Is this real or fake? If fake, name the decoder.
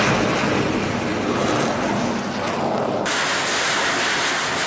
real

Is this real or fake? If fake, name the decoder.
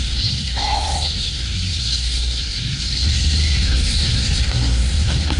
fake, codec, SNAC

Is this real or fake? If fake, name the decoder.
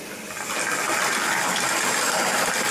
real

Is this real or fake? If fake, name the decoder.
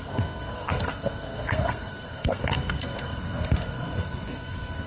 fake, codec, SNAC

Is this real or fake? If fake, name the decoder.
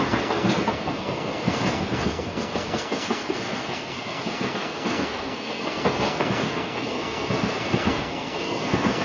fake, codec, SNAC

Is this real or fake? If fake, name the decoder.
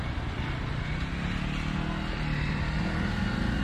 real